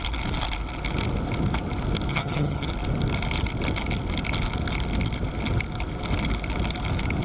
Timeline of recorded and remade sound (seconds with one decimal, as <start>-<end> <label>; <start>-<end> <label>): 0.0-2.1 recorded; 2.1-2.7 remade; 2.7-7.2 recorded